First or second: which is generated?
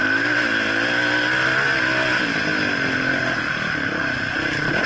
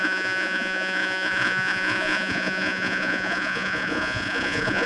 second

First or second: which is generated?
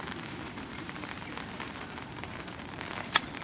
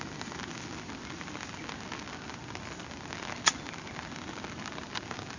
first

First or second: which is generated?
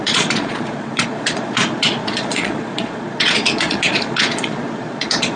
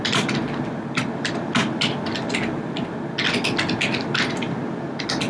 first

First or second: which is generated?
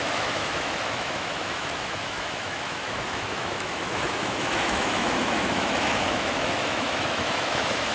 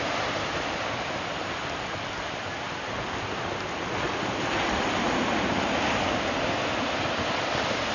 first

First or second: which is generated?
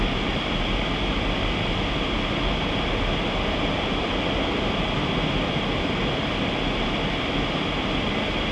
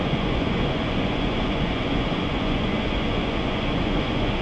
second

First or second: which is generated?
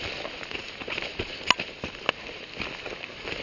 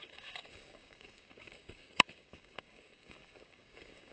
second